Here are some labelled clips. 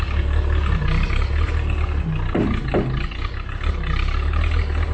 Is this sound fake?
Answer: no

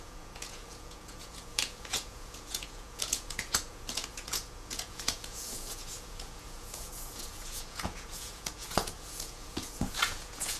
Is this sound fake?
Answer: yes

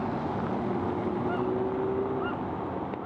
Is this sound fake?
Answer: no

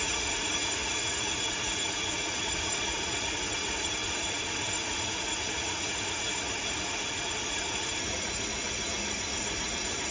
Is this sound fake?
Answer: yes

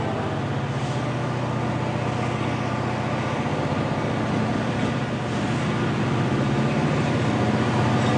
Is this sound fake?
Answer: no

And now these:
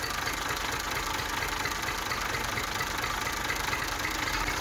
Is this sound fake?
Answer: no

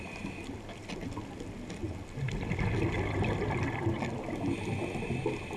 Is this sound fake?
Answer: no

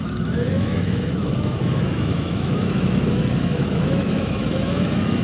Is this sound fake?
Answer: yes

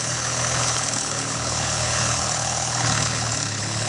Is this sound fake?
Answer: yes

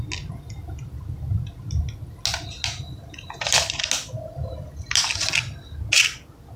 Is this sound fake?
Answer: no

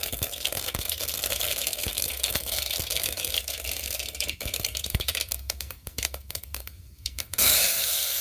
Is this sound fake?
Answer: yes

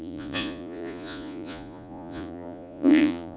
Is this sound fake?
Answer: yes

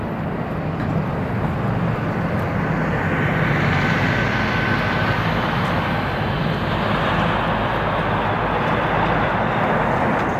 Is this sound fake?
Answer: no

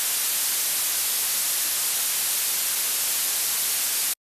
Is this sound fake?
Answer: no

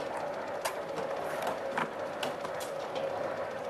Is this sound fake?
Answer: no